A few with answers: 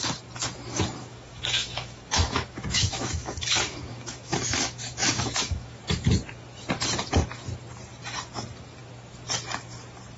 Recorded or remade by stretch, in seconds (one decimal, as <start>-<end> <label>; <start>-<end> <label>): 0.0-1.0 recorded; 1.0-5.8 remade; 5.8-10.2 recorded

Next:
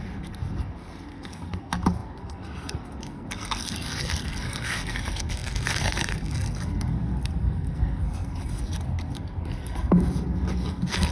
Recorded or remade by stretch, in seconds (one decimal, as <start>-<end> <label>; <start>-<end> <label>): 0.0-11.1 remade

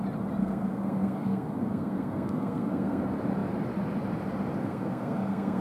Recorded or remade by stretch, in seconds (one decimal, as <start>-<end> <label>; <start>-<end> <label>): 0.0-0.4 recorded; 0.4-3.0 remade; 3.0-4.6 recorded; 4.6-5.6 remade

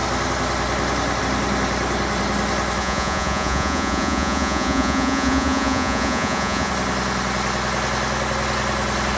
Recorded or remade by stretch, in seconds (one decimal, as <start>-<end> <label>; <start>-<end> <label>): 0.0-2.8 recorded; 2.8-6.7 remade; 6.7-9.2 recorded

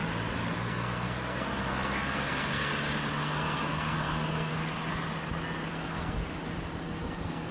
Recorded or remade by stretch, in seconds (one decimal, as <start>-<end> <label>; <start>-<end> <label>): 0.0-0.5 recorded; 0.5-2.7 remade; 2.7-3.2 recorded; 3.2-4.5 remade; 4.5-5.7 recorded; 5.7-6.2 remade; 6.2-6.8 recorded; 6.8-7.5 remade

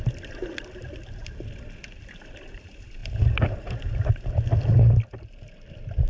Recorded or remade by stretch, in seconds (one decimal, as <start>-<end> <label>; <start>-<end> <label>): 0.0-6.1 recorded

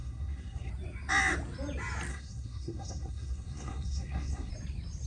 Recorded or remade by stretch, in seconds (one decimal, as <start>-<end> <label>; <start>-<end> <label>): 0.0-0.7 remade; 0.7-2.1 recorded; 2.1-4.5 remade; 4.5-5.1 recorded

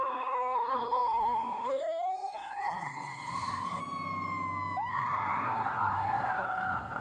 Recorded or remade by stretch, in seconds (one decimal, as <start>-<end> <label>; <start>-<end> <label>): 0.0-3.8 remade; 3.8-4.9 recorded; 4.9-7.0 remade